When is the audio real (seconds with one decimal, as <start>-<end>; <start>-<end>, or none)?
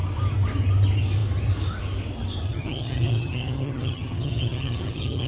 0.0-2.5